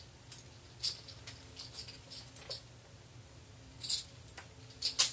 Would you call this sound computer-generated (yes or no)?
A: no